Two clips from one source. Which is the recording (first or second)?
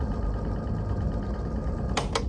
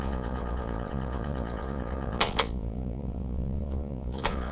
first